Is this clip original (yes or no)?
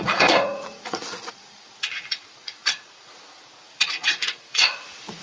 no